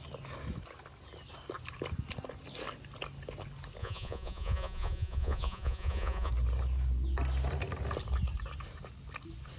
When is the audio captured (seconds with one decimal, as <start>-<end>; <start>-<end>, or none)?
0.0-3.8; 6.3-9.6